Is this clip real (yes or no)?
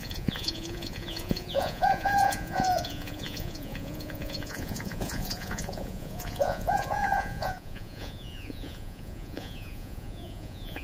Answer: no